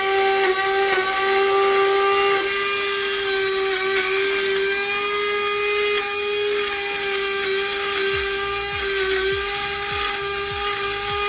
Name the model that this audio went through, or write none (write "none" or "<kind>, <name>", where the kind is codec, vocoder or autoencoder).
none